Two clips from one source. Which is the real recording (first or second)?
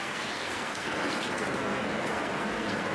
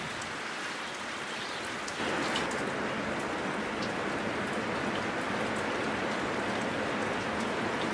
second